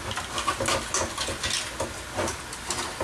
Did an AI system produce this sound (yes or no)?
no